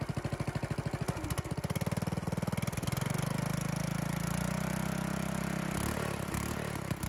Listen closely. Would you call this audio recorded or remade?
recorded